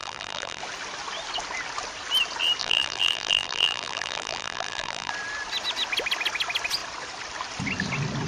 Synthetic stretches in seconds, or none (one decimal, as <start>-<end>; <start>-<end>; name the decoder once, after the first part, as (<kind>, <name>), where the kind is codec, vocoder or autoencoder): 0.0-0.6 (vocoder, BigVGAN v2); 2.6-5.1